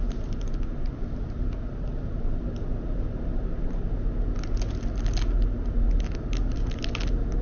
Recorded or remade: recorded